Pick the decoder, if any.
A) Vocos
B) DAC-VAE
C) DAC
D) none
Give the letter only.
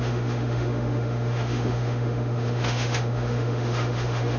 B